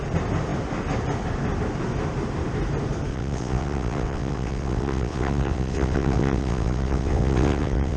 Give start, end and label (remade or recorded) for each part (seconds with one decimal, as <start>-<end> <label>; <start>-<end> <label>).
0.0-3.1 recorded; 3.1-8.0 remade